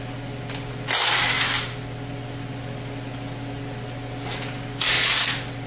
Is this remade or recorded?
recorded